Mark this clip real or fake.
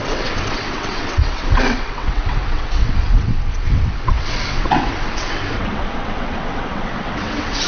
fake